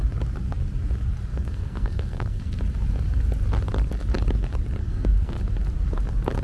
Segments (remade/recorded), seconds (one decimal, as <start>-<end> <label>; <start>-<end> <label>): 0.0-1.3 recorded; 1.3-2.6 remade; 2.6-4.8 recorded; 4.8-5.4 remade; 5.4-6.4 recorded